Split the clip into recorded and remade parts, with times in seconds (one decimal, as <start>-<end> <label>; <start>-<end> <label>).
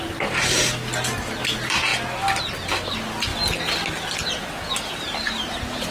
0.0-5.9 recorded